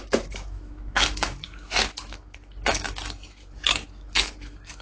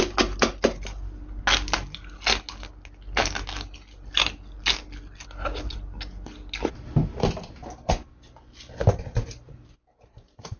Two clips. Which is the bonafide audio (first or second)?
second